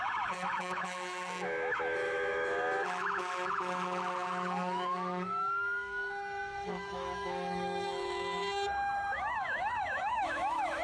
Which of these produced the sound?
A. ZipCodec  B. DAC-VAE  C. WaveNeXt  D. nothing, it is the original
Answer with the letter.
B